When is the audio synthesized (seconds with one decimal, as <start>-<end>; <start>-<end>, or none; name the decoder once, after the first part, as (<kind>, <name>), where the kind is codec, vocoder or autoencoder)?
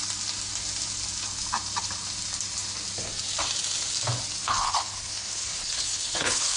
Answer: 4.4-6.6 (codec, HILCodec)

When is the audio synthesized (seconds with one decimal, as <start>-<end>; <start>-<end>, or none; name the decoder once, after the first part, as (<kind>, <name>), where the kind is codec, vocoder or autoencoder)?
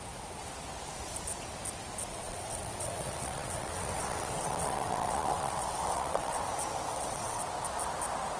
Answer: 2.1-6.5 (vocoder, WaveNeXt); 6.9-7.4